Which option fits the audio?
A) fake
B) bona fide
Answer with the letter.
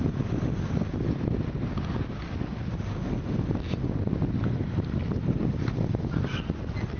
B